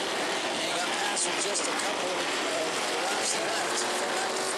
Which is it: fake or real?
fake